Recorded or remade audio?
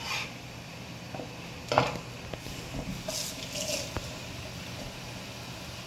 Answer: recorded